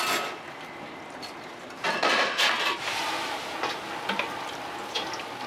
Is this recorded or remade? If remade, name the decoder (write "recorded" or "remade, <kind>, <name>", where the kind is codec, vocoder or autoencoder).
recorded